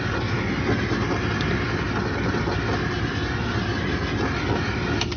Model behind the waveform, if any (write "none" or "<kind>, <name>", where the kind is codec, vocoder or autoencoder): none